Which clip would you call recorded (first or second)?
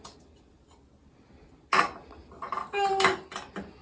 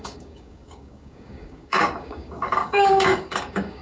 first